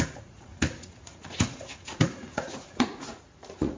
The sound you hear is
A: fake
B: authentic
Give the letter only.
A